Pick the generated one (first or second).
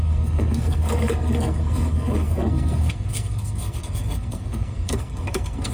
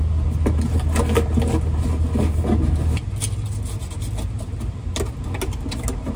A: first